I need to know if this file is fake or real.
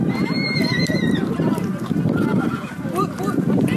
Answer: fake